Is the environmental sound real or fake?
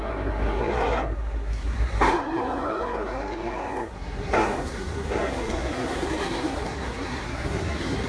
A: fake